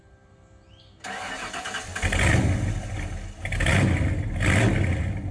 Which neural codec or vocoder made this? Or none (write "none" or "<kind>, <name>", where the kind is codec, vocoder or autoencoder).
none